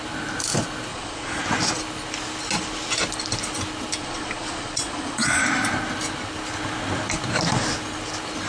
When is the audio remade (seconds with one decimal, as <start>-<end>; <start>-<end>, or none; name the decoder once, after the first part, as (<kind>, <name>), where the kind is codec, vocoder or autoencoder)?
0.9-1.4 (vocoder, Vocos); 4.0-5.4